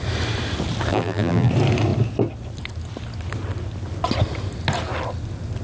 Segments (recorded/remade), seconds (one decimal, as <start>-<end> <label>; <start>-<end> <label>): 0.0-0.9 recorded; 0.9-1.5 remade; 1.5-5.6 recorded

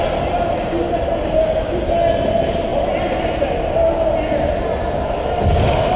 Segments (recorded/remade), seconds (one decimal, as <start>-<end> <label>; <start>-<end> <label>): 0.0-6.0 recorded

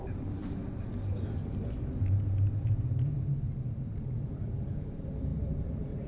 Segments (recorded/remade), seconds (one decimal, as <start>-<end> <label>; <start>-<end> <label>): 0.0-6.1 remade

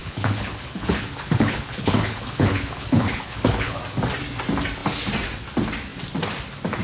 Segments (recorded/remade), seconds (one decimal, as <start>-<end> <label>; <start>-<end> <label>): 0.0-3.8 remade; 3.8-6.8 recorded

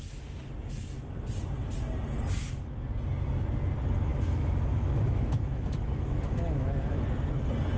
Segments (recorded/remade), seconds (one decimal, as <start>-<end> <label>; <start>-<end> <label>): 0.0-4.1 recorded; 4.1-7.0 remade; 7.0-7.8 recorded

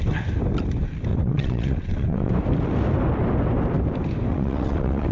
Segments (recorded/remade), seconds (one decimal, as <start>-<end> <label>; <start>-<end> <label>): 0.0-1.1 recorded; 1.1-2.3 remade; 2.3-4.3 recorded; 4.3-5.1 remade

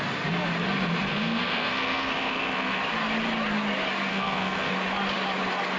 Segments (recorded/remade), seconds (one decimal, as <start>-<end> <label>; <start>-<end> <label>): 0.0-1.1 recorded; 1.1-2.8 remade; 2.8-4.1 recorded; 4.1-4.7 remade; 4.7-5.8 recorded